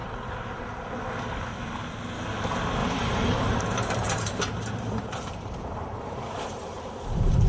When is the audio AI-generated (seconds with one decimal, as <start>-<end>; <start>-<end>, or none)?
0.0-0.8; 2.8-7.5